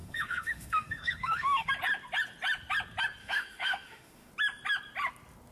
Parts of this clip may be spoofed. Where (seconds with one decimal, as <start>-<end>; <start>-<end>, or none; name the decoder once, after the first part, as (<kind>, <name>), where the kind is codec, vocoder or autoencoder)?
0.0-1.7 (autoencoder, DAC-VAE); 3.2-4.3